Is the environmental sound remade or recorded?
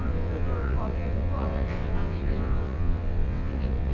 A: remade